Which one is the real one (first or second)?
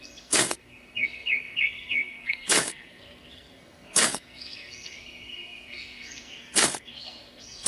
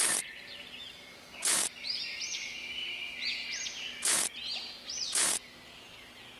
second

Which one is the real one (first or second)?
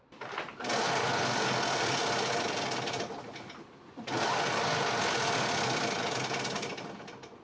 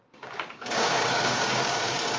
first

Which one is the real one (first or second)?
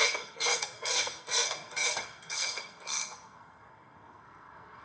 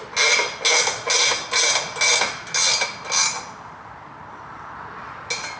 second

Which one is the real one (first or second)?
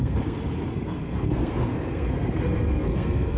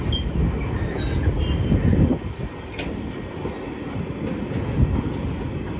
second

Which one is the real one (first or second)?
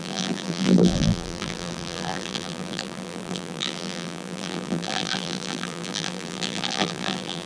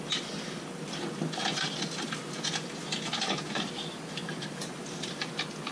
second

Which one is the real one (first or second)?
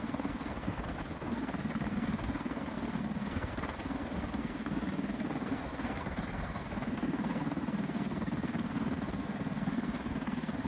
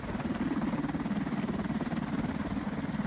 second